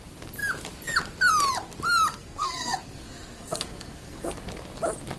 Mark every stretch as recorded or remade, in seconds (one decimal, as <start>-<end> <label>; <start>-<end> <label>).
0.0-2.1 recorded; 2.1-4.3 remade; 4.3-5.2 recorded